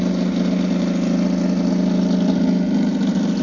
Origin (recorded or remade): recorded